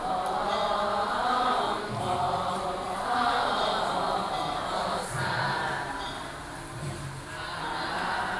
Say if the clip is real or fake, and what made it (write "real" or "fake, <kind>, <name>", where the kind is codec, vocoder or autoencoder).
fake, vocoder, BigVGAN v2